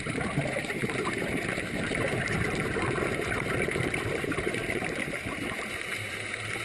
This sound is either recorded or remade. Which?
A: remade